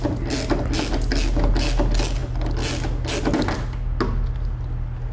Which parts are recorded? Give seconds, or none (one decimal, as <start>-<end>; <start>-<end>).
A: 0.0-5.1